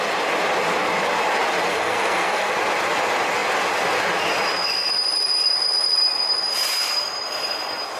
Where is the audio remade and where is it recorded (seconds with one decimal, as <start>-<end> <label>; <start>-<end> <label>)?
0.0-1.7 recorded; 1.7-2.5 remade; 2.5-8.0 recorded